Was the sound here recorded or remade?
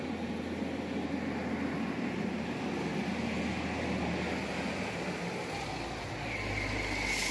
recorded